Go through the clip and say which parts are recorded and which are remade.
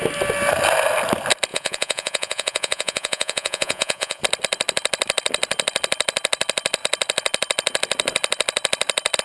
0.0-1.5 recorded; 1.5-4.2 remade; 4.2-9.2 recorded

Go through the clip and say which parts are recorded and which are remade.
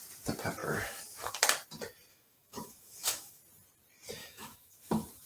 0.0-0.6 recorded; 0.6-1.3 remade; 1.3-2.1 recorded; 2.1-3.4 remade; 3.4-4.2 recorded; 4.2-5.3 remade